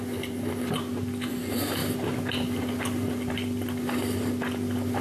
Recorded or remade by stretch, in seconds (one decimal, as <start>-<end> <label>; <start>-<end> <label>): 0.0-5.0 recorded